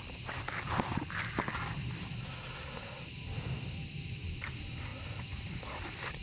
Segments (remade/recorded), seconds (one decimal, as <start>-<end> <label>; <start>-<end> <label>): 0.0-6.2 recorded